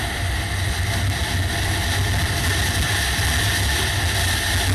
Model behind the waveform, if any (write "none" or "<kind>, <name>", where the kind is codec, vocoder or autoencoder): none